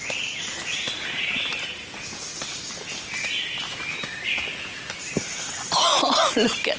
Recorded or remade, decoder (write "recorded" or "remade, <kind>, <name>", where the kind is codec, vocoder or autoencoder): recorded